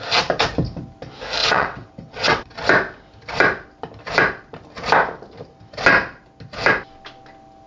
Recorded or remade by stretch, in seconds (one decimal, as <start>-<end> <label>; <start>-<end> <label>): 0.0-1.4 recorded; 1.4-2.5 remade; 2.5-7.7 recorded